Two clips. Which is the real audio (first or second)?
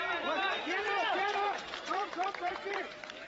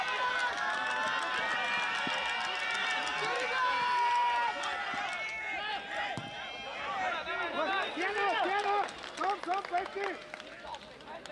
second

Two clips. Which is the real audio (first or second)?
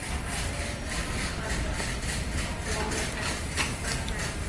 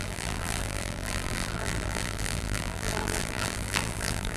first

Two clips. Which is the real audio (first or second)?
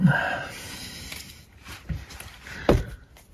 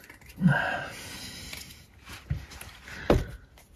second